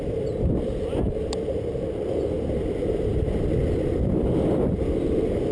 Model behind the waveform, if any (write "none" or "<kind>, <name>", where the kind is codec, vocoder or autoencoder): none